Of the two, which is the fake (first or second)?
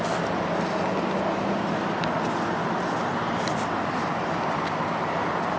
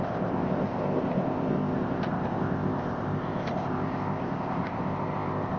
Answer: second